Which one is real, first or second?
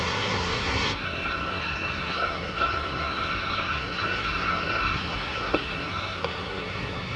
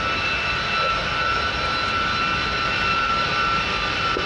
second